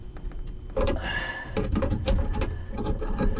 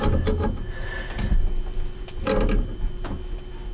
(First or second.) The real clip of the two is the second